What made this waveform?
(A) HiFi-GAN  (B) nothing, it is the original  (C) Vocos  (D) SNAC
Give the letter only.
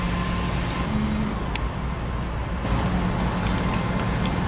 B